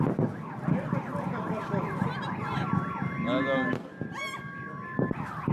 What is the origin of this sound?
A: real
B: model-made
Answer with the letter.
A